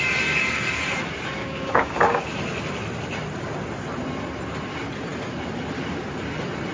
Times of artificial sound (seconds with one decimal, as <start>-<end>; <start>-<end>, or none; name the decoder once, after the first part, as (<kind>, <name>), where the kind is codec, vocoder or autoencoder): 1.4-2.2 (codec, DAC)